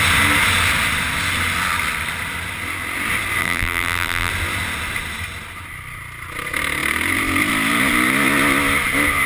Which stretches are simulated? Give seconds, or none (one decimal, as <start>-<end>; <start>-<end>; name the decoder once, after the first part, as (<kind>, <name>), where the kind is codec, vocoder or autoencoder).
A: 3.4-4.3 (vocoder, BigVGAN v2)